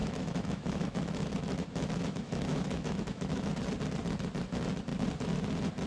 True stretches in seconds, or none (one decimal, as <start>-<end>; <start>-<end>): 3.5-5.9